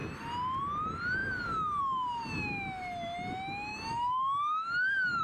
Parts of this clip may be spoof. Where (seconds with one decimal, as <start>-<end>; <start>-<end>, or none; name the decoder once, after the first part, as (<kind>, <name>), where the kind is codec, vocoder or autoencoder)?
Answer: 3.7-5.2 (autoencoder, DAC-VAE)